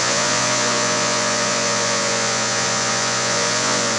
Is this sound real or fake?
fake